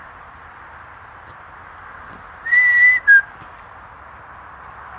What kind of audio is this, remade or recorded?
recorded